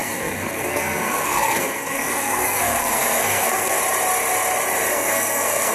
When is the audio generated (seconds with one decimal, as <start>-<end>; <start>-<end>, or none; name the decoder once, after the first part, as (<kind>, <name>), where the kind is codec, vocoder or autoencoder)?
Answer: 0.0-3.8 (codec, SNAC); 4.9-5.7